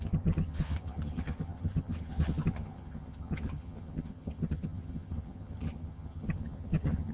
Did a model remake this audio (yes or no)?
yes